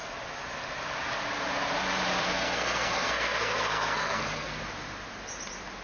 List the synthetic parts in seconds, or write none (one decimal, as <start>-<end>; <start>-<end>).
2.2-4.6